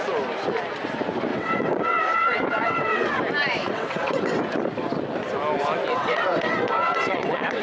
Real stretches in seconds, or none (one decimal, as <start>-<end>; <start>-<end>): 0.0-1.3; 3.2-3.6; 4.4-5.9